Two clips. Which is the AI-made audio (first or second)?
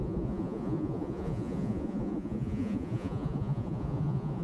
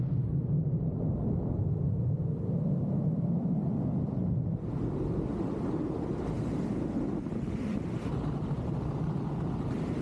first